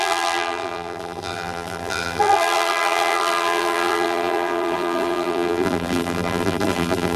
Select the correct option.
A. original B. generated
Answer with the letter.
B